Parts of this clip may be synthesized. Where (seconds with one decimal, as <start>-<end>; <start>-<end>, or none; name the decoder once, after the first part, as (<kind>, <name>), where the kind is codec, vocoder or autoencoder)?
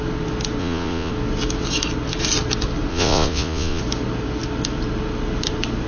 0.6-1.1 (vocoder, Vocos); 2.9-3.8